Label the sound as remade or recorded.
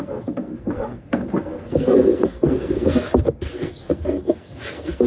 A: remade